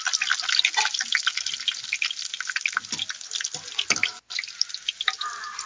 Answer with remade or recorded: recorded